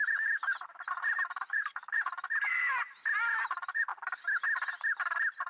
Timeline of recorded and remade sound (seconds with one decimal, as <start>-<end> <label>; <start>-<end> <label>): 0.0-3.9 remade; 3.9-5.5 recorded